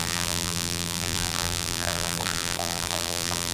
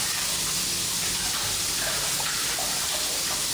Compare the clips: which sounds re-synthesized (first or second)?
first